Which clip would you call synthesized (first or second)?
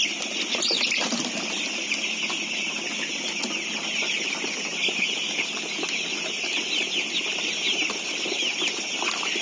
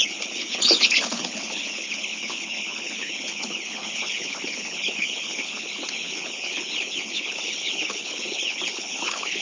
second